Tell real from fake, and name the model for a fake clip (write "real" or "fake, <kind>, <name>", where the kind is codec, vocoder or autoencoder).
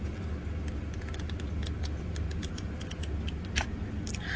real